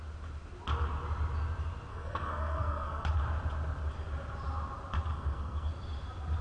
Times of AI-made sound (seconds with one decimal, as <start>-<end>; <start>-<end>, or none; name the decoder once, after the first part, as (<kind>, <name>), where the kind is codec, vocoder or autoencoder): 1.9-3.1 (codec, SNAC); 5.1-5.7